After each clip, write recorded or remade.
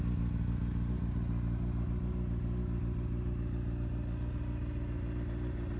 recorded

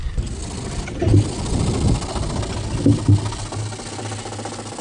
recorded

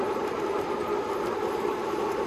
recorded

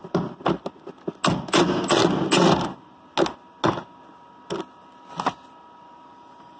recorded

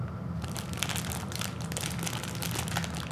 recorded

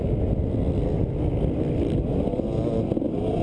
recorded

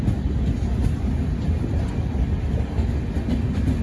recorded